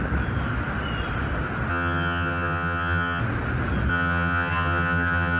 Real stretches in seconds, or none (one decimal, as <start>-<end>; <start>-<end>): 0.0-1.7; 3.2-3.9